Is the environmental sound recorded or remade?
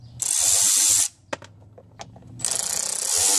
recorded